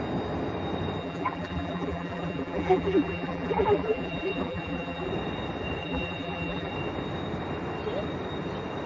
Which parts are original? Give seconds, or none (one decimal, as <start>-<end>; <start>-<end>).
0.0-1.0; 5.1-5.8; 6.7-8.9